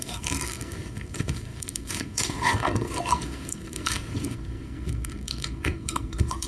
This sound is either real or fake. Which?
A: fake